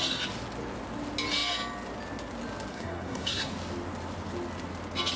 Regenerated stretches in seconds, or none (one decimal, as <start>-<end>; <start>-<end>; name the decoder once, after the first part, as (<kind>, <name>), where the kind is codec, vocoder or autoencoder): 2.7-3.5 (codec, SNAC)